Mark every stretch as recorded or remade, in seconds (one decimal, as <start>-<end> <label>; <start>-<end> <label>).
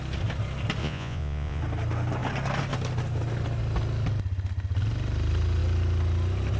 0.0-0.8 recorded; 0.8-1.6 remade; 1.6-6.6 recorded